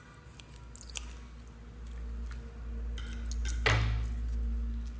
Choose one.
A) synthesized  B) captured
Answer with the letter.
B